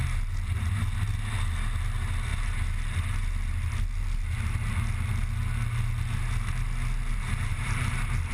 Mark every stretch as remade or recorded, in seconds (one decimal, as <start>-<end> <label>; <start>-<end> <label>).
0.0-7.1 recorded; 7.1-8.3 remade